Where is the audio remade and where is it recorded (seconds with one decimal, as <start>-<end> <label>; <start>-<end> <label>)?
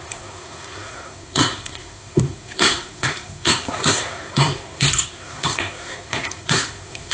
0.0-7.1 remade